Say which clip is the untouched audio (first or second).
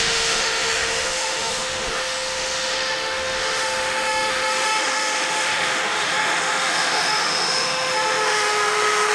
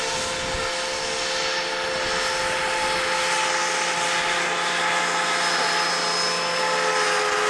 second